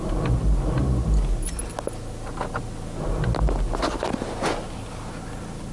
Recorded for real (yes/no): yes